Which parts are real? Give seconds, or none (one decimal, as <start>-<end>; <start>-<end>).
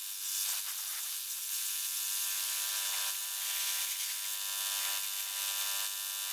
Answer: 0.0-0.9; 2.7-3.2; 3.8-6.3